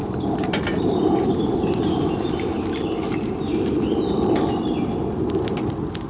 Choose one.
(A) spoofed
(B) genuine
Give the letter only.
B